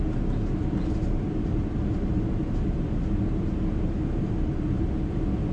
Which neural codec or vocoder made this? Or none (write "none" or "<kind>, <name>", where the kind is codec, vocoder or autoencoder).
none